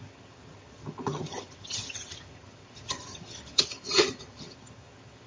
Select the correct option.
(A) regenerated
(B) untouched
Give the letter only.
A